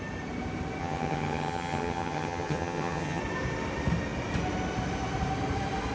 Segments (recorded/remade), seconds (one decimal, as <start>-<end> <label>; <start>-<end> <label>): 0.0-0.8 recorded; 0.8-3.2 remade; 3.2-5.9 recorded